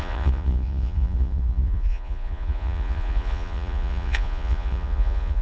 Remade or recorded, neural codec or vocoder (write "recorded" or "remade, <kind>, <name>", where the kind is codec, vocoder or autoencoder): remade, vocoder, Vocos